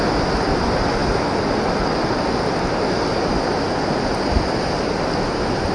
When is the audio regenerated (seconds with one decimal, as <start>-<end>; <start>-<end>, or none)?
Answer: none